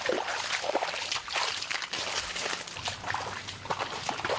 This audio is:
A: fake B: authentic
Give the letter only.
B